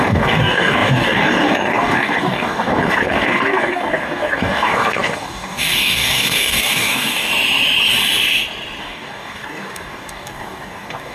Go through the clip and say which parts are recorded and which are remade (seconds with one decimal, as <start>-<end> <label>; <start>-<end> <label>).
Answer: 0.0-7.3 remade; 7.3-8.8 recorded; 8.8-11.1 remade